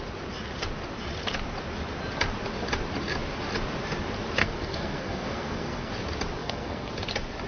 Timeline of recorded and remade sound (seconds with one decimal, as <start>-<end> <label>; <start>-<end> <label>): 0.0-4.4 recorded; 4.4-5.9 remade; 5.9-6.4 recorded; 6.4-6.9 remade; 6.9-7.5 recorded